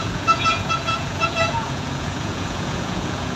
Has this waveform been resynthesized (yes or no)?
yes